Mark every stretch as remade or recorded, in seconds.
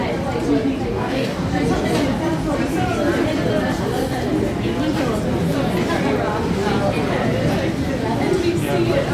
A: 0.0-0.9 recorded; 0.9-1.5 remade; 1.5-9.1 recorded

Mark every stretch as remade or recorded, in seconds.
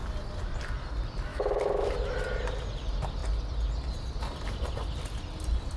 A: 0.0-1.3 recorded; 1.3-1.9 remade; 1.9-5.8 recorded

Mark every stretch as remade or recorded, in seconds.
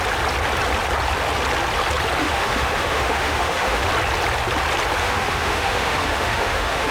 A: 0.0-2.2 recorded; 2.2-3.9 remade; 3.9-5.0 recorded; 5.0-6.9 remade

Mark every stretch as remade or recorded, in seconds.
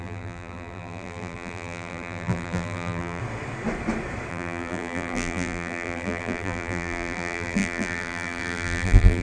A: 0.0-3.2 remade; 3.2-4.3 recorded; 4.3-9.2 remade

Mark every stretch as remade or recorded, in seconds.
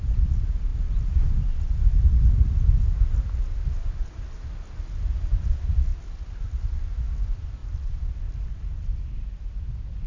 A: 0.0-10.1 recorded